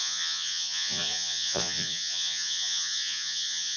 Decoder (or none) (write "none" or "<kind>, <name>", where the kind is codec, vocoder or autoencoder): vocoder, Vocos